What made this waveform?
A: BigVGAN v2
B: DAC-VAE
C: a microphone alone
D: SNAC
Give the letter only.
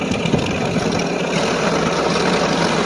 C